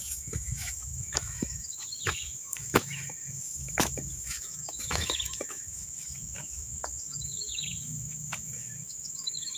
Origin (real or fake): fake